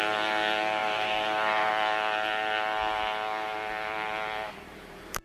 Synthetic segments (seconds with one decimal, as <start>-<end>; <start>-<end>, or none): 0.8-1.7